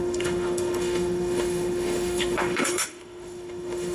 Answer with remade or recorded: remade